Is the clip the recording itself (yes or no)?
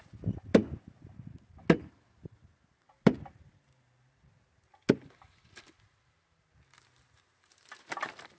yes